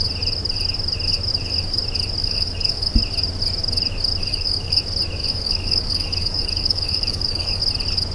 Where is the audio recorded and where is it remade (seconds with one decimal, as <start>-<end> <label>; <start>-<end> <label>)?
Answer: 0.0-2.2 recorded; 2.2-2.9 remade; 2.9-4.2 recorded; 4.2-4.8 remade; 4.8-5.2 recorded; 5.2-7.6 remade; 7.6-8.1 recorded